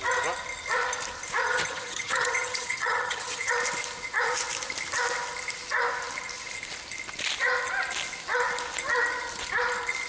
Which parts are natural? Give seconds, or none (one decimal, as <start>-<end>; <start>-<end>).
0.0-1.4; 3.5-10.1